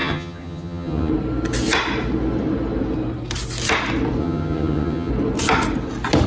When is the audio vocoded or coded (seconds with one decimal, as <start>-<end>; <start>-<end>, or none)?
0.0-1.1; 4.2-5.1